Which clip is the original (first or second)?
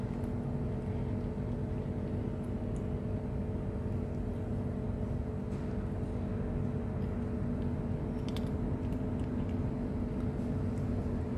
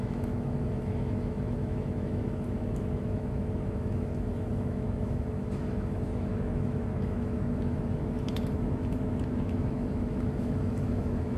first